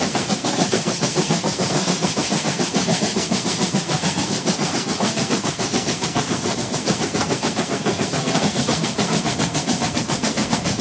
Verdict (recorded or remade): remade